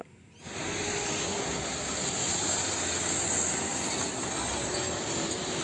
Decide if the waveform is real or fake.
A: real